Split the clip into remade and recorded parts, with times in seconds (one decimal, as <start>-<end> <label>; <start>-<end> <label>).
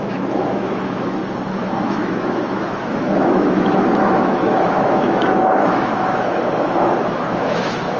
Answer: 0.0-1.2 remade; 1.2-1.8 recorded; 1.8-8.0 remade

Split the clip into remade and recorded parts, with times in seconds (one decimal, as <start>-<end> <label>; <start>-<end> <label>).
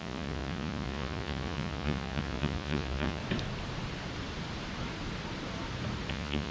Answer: 0.0-3.2 remade; 3.2-6.1 recorded; 6.1-6.5 remade